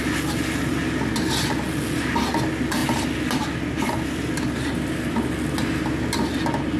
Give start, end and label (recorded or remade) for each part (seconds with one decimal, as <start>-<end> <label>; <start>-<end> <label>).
0.0-6.8 recorded